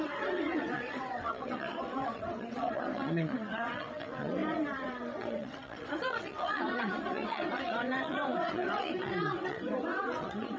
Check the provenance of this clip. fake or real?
fake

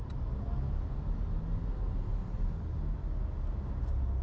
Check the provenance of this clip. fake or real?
real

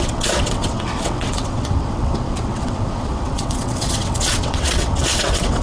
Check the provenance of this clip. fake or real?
fake